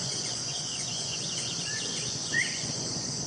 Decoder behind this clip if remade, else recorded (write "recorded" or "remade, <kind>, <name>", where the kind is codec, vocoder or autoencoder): remade, vocoder, Vocos